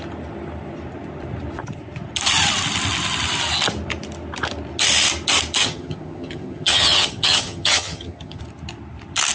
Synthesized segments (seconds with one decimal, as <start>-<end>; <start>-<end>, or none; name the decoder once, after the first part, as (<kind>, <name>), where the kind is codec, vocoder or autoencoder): 5.6-8.4 (vocoder, HiFi-GAN)